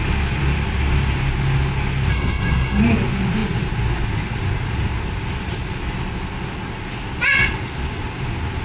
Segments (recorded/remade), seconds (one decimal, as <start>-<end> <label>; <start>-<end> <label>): 0.0-2.1 recorded; 2.1-2.8 remade; 2.8-8.6 recorded